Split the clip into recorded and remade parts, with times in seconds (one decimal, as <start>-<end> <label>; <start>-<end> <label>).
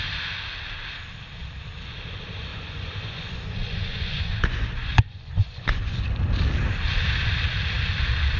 0.0-2.5 recorded; 2.5-6.0 remade; 6.0-8.4 recorded